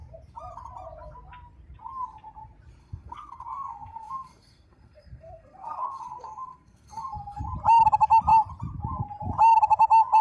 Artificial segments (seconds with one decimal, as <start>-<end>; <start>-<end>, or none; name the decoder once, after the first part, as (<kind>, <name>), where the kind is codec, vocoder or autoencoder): 2.8-7.4 (codec, SNAC)